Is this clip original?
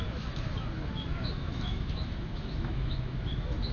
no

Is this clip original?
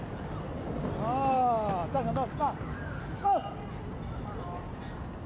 yes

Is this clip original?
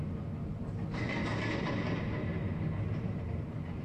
yes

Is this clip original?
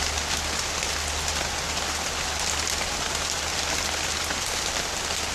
yes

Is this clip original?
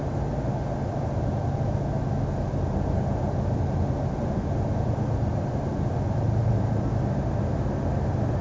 yes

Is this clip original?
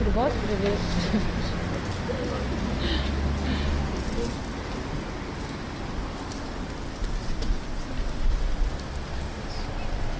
yes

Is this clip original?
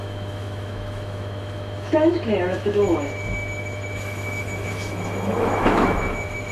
no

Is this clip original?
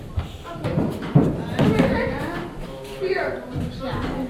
yes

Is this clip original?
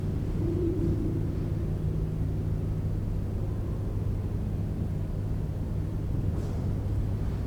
yes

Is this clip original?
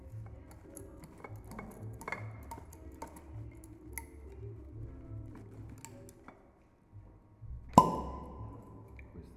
yes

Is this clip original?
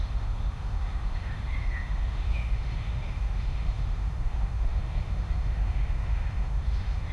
no